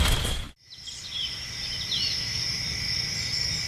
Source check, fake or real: real